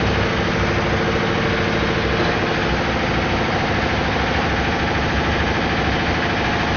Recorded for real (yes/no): yes